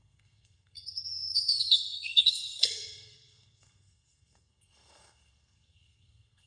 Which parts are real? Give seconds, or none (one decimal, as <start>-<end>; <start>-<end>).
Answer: none